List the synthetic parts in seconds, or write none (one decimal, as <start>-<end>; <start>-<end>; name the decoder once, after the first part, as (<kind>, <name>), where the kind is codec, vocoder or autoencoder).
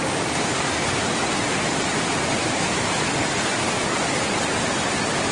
2.4-3.1 (autoencoder, DAC-VAE)